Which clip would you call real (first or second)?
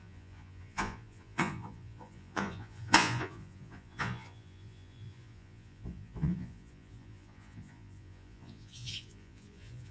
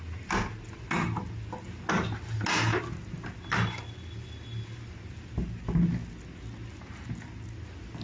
second